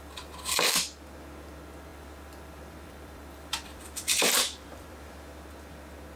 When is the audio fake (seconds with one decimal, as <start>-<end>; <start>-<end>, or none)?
1.9-5.1